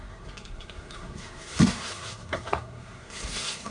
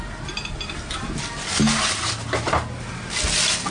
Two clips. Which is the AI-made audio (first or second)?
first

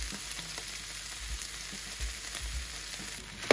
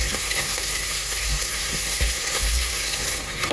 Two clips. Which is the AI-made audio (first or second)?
second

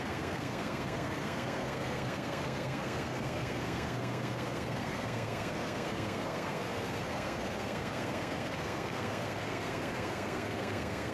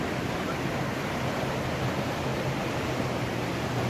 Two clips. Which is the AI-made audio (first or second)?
first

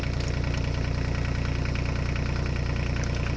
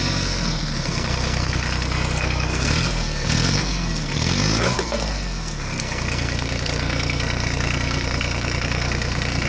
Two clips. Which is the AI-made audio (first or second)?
second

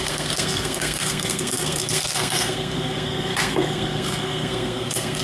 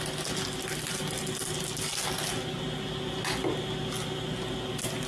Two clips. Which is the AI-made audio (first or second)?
first